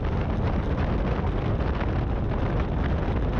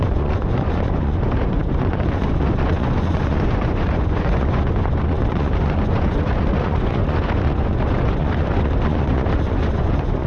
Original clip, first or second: first